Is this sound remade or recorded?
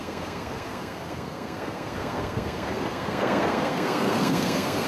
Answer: remade